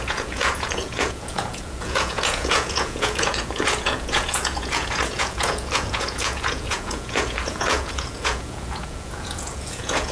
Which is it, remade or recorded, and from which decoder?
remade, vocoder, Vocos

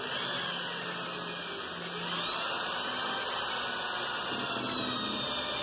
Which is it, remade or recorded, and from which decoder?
recorded